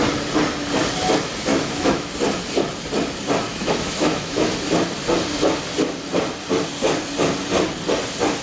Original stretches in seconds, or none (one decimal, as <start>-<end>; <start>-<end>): 0.0-1.5; 2.1-3.5; 4.5-8.4